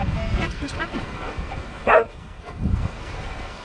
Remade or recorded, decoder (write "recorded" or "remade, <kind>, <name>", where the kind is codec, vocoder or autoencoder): remade, codec, SNAC